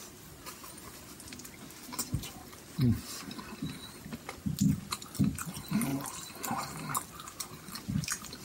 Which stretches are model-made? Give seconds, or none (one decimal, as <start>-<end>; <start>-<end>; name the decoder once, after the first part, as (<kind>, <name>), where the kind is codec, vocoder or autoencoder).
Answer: none